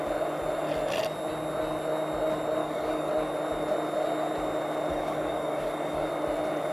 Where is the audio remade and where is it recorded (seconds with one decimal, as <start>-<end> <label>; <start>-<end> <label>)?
0.0-2.6 recorded; 2.6-3.1 remade; 3.1-4.9 recorded; 4.9-6.1 remade; 6.1-6.7 recorded